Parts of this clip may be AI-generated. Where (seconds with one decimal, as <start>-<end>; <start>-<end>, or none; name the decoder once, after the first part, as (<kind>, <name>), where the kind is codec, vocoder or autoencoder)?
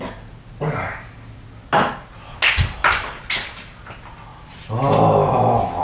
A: none